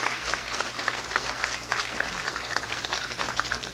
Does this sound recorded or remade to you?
remade